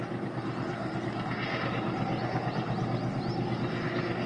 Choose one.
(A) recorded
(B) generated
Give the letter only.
A